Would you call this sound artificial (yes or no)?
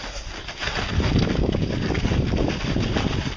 no